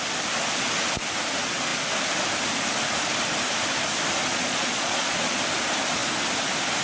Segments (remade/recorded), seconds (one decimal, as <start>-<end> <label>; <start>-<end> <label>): 0.0-4.3 recorded; 4.3-5.4 remade; 5.4-6.8 recorded